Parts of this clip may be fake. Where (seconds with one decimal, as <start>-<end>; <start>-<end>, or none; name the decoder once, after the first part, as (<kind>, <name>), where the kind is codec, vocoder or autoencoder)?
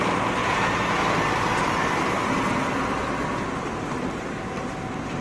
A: 0.4-1.0 (vocoder, Vocos)